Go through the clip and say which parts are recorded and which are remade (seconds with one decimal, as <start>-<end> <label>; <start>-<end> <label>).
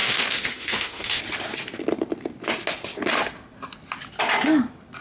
0.0-1.2 remade; 1.2-5.0 recorded